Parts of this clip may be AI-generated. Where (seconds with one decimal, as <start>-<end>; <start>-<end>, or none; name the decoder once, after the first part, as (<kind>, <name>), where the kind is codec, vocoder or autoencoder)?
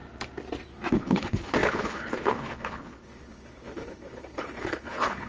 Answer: 0.9-5.3 (codec, HILCodec)